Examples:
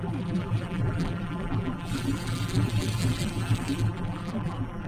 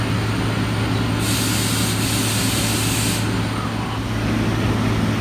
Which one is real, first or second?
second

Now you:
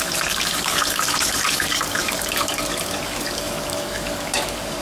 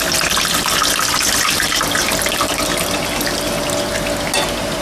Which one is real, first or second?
second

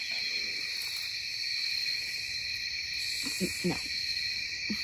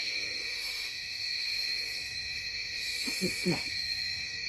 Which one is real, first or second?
first